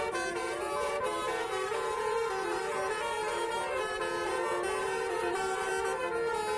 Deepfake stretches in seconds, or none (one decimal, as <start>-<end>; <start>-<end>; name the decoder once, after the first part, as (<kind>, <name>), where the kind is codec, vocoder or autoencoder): 0.4-2.6 (vocoder, BigVGAN v2); 3.2-4.0; 4.8-5.7